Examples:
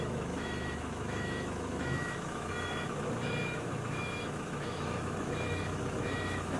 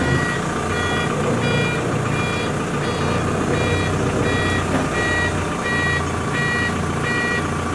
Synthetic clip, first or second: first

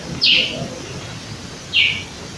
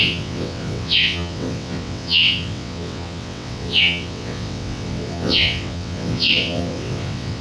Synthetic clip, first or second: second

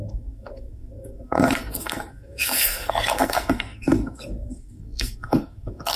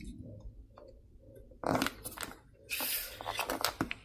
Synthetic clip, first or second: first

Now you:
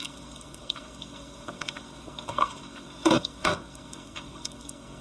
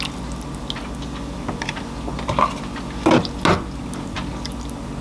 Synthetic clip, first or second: first